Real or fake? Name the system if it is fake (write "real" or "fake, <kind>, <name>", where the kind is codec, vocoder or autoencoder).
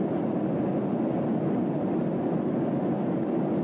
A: real